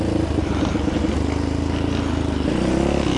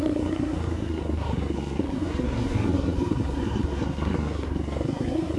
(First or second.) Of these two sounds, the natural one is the first